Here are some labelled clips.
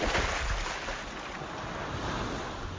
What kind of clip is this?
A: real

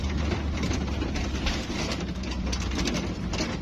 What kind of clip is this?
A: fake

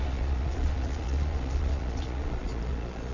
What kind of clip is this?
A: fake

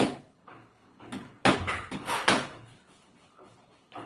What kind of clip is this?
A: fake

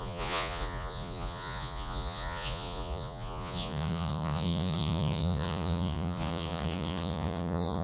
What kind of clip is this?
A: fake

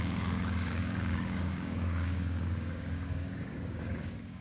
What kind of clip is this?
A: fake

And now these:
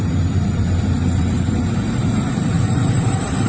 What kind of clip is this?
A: fake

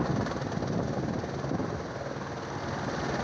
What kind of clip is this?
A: real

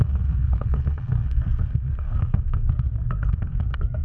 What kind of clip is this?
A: fake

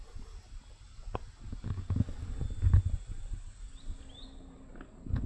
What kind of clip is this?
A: real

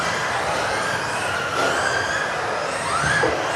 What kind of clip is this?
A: real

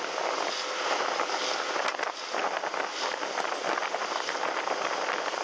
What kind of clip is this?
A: real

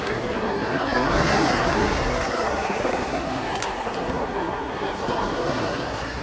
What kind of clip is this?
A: fake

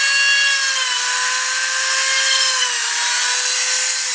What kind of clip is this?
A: real